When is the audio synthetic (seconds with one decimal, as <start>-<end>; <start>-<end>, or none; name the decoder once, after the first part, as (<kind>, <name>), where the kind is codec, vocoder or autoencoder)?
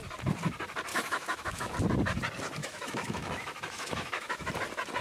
0.9-1.7 (autoencoder, DAC-VAE); 2.6-4.5